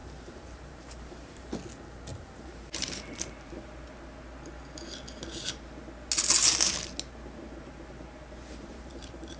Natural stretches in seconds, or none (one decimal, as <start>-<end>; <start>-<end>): 1.5-2.1; 3.5-8.7